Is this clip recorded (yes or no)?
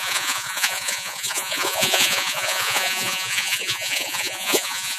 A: no